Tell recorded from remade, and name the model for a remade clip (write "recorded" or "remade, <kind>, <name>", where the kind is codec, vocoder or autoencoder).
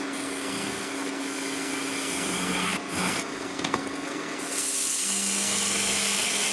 remade, codec, SNAC